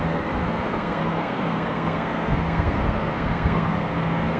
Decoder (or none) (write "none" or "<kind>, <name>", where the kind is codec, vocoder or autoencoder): codec, SNAC